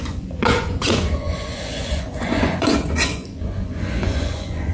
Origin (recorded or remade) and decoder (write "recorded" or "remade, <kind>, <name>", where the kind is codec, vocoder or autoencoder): remade, vocoder, Vocos